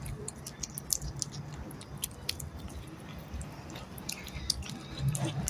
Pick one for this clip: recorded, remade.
recorded